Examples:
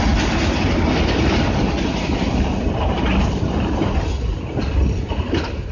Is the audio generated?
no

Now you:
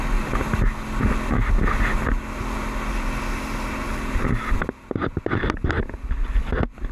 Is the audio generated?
no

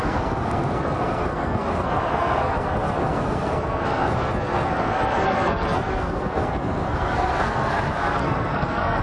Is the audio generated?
yes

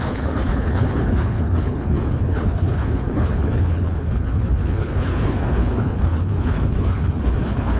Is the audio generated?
yes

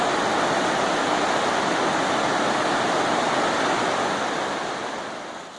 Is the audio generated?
no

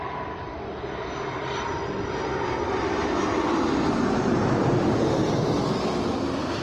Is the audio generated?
no